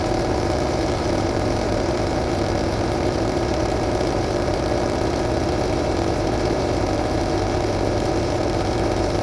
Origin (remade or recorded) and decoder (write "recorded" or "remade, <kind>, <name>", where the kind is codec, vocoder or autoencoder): remade, vocoder, BigVGAN v2